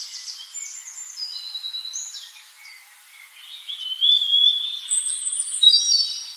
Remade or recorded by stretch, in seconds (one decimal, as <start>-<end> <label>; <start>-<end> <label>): 0.0-4.4 recorded; 4.4-5.8 remade; 5.8-6.4 recorded